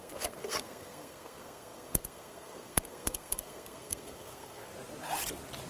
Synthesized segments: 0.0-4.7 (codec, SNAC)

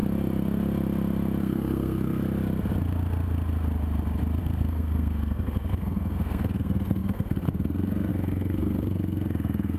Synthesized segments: 1.4-2.2 (codec, SNAC); 4.4-9.8

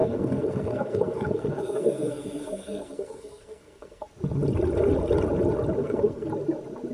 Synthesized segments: 0.0-4.1 (codec, SNAC); 5.8-6.3